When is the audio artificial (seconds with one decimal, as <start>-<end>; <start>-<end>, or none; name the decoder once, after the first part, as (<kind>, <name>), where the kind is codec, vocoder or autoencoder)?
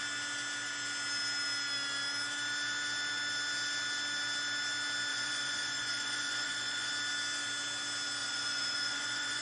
5.1-6.9 (vocoder, Vocos); 8.2-9.4